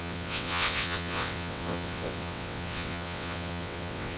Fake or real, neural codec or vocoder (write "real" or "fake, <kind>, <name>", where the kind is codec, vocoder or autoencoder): fake, vocoder, WaveNeXt